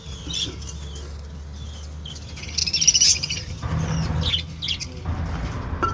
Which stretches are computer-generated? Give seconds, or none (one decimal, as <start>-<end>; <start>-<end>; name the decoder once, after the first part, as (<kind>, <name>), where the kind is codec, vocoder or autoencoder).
2.6-3.7 (vocoder, BigVGAN v2)